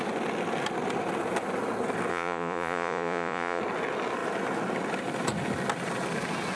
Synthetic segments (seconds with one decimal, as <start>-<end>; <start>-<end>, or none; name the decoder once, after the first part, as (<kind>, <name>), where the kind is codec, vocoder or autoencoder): 2.1-3.6 (vocoder, Vocos)